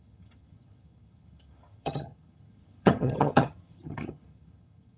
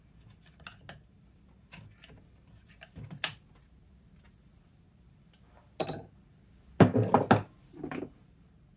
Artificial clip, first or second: first